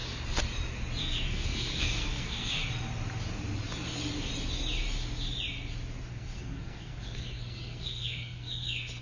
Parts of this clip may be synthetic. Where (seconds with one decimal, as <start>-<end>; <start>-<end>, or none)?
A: 1.0-2.6; 6.1-9.0